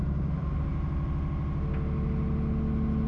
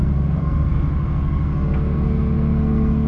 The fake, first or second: second